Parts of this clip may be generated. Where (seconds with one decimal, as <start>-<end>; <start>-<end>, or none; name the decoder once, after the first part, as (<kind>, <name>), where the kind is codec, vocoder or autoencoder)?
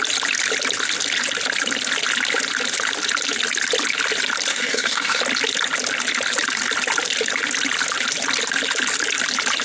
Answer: 4.5-5.2 (codec, DAC)